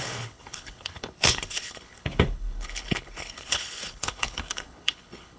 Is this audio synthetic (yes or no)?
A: yes